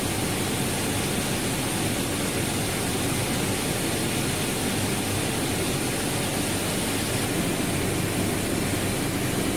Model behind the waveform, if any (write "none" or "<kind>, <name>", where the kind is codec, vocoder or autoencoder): none